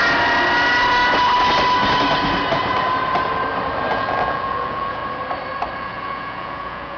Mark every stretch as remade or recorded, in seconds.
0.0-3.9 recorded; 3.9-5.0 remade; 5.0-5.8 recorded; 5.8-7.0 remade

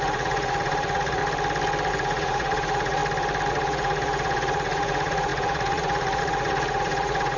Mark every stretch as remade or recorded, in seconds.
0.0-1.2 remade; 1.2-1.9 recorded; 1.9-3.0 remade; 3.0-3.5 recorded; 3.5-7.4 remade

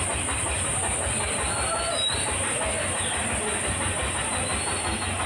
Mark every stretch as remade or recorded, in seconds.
0.0-5.3 recorded

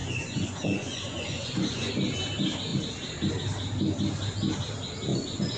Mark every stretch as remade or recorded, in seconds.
0.0-1.9 remade; 1.9-5.1 recorded; 5.1-5.6 remade

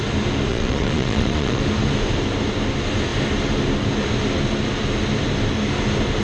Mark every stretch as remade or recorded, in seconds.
0.0-0.5 recorded; 0.5-1.6 remade; 1.6-6.2 recorded